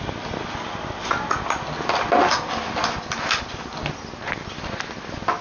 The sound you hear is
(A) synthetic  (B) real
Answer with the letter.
B